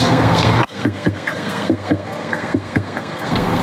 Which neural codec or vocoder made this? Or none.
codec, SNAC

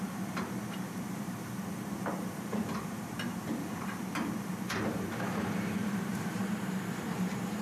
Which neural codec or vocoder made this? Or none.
vocoder, BigVGAN v2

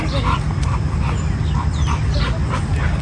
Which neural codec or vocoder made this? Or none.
none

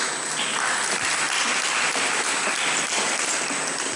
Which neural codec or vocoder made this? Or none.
none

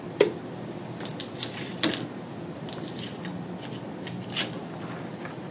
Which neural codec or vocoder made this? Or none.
none